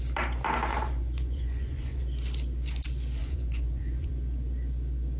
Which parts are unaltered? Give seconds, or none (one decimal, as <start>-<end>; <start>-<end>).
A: 0.0-0.7; 2.0-3.2; 4.1-5.2